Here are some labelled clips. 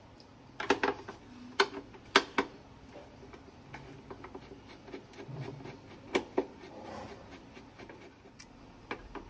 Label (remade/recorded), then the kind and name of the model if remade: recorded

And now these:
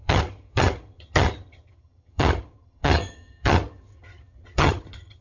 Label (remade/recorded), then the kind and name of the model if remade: remade, vocoder, HiFi-GAN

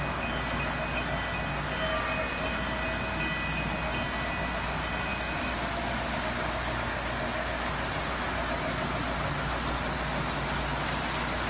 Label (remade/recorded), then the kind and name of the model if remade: recorded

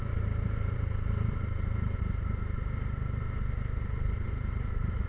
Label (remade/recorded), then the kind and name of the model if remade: remade, vocoder, BigVGAN v2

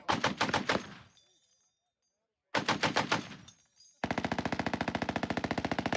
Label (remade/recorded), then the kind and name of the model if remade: recorded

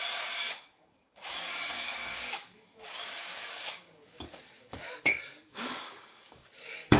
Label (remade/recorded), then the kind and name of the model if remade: remade, codec, DAC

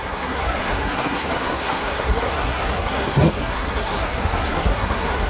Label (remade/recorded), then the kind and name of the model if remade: remade, codec, SNAC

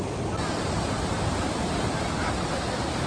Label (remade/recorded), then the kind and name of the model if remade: recorded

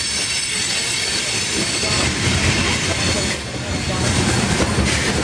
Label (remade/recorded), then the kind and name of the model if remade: recorded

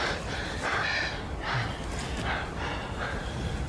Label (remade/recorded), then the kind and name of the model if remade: recorded